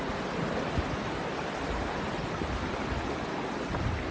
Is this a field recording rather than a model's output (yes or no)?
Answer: yes